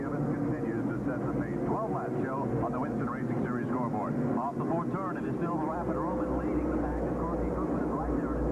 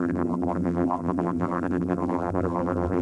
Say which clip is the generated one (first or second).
second